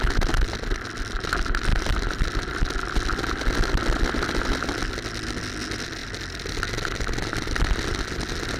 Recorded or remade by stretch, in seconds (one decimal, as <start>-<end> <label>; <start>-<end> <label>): 0.0-8.6 recorded